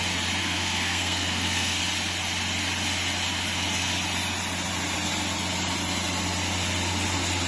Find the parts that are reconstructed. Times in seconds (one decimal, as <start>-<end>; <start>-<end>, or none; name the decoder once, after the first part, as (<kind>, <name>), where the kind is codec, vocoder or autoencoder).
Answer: 0.4-1.8 (codec, SNAC)